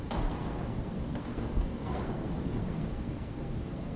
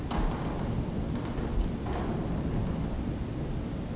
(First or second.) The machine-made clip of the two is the first